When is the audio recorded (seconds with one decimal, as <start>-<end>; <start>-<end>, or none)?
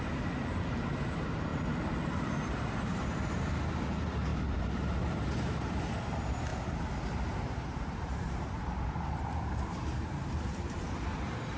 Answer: 0.0-1.5; 3.5-4.3; 5.8-6.5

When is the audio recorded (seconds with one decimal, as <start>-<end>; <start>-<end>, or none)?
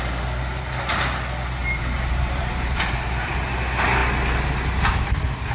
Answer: 0.0-1.6; 3.4-5.5